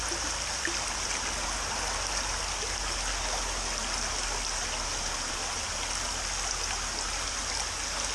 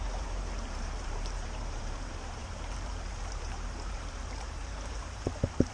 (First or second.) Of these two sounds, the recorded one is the first